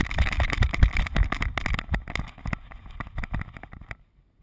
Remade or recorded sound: recorded